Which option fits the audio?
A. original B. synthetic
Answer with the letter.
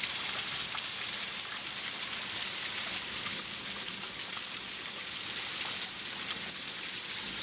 A